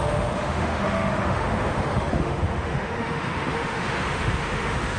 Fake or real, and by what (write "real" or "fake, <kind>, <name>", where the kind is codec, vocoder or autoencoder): fake, autoencoder, DAC-VAE